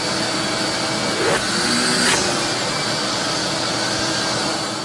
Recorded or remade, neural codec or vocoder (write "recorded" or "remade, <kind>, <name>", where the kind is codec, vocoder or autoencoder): recorded